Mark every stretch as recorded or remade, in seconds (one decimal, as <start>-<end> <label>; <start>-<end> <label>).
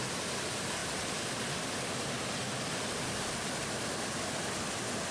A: 0.0-5.1 recorded